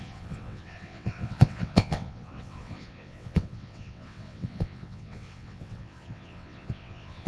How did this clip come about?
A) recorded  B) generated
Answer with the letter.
B